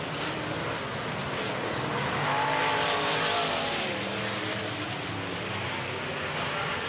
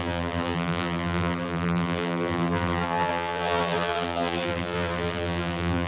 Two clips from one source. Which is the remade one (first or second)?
second